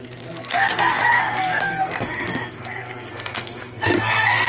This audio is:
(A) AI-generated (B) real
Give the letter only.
A